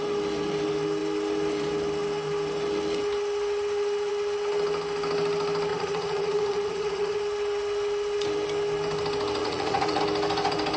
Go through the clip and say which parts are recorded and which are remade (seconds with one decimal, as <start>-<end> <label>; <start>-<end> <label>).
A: 0.0-5.7 recorded; 5.7-7.2 remade; 7.2-9.4 recorded; 9.4-10.0 remade; 10.0-10.8 recorded